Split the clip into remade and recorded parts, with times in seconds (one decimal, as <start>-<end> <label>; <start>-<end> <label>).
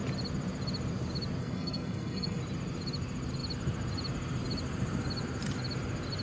0.0-1.4 recorded; 1.4-2.4 remade; 2.4-6.2 recorded